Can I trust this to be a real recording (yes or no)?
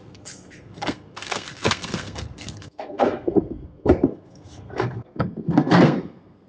no